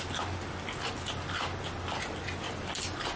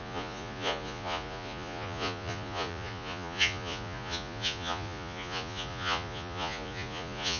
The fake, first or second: second